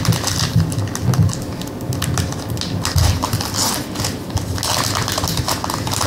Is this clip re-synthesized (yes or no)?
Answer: no